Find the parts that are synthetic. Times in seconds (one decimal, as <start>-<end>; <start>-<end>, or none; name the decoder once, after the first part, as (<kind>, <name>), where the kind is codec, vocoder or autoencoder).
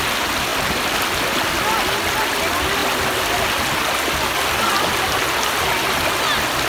none